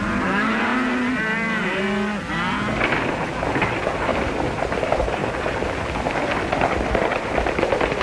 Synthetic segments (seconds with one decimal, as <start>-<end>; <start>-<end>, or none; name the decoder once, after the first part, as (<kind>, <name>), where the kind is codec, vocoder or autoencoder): none